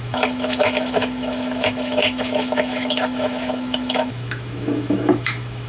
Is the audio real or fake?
fake